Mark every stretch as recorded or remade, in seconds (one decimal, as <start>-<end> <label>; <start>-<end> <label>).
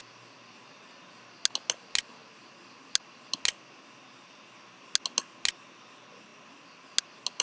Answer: 0.0-7.4 recorded